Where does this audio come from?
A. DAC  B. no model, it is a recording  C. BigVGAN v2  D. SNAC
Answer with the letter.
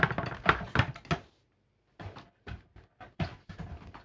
B